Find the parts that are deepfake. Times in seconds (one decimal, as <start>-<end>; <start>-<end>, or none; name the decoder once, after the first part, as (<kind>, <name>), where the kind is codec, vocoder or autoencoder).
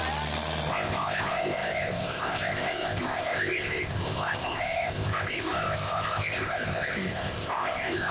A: 0.7-8.1 (codec, ZipCodec)